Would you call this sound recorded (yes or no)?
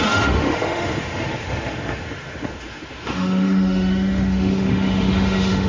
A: no